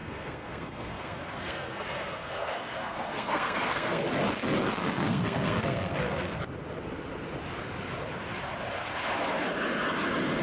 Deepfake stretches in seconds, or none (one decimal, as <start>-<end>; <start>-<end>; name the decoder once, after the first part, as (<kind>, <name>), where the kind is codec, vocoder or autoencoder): 0.0-4.1 (codec, SNAC); 4.8-6.4